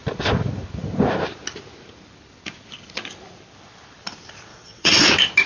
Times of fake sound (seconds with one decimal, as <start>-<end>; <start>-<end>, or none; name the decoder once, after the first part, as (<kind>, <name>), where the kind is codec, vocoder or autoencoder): 4.5-5.1 (vocoder, WaveNeXt)